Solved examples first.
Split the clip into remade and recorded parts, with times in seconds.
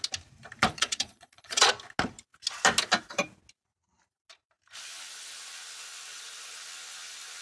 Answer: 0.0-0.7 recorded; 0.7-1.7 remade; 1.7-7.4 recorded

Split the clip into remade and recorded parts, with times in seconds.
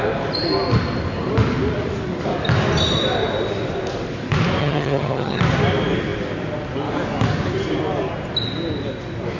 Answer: 0.0-4.6 recorded; 4.6-5.4 remade; 5.4-9.4 recorded